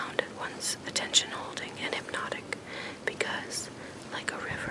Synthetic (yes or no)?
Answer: no